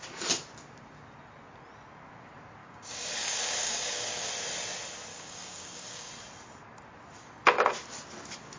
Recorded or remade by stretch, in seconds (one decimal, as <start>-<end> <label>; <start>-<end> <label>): 0.0-2.6 recorded; 2.6-4.3 remade; 4.3-5.1 recorded; 5.1-6.1 remade; 6.1-8.6 recorded